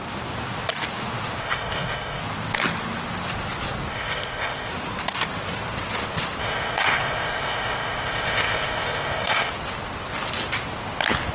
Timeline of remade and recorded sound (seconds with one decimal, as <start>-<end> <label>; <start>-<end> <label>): 0.0-1.4 recorded; 1.4-2.2 remade; 2.2-3.9 recorded; 3.9-4.7 remade; 4.7-6.4 recorded; 6.4-9.5 remade; 9.5-11.3 recorded